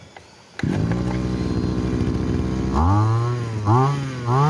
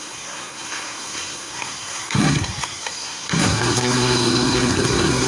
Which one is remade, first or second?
second